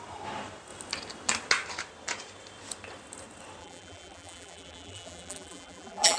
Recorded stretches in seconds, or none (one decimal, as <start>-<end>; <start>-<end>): 0.0-3.6